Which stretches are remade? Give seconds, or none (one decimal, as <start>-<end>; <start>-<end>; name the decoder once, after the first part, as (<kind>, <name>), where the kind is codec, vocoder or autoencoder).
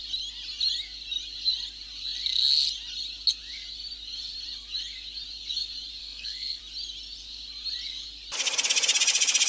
6.0-6.6 (codec, SNAC)